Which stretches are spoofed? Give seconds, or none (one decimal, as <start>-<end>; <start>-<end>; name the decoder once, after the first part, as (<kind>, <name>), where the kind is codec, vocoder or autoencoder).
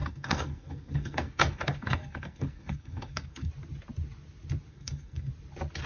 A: 0.0-3.5 (codec, SNAC); 4.7-5.3